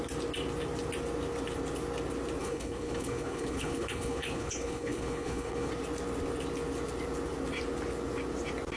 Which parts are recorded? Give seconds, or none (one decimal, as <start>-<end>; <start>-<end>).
0.0-2.4; 5.7-8.8